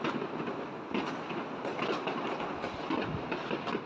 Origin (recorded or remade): recorded